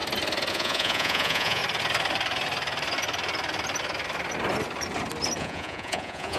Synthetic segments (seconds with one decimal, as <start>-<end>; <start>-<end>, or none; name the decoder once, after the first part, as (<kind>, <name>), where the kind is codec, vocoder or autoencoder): 0.5-1.6 (vocoder, Vocos); 5.4-6.4